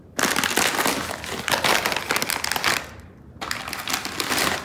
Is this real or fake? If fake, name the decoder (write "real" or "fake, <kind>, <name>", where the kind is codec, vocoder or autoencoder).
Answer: real